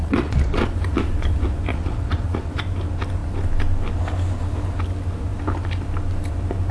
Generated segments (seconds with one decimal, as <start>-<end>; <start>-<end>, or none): 0.0-0.8; 1.7-2.6